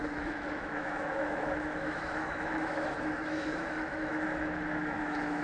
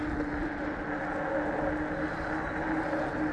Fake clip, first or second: first